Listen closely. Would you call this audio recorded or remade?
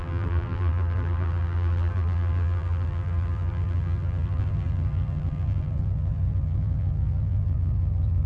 remade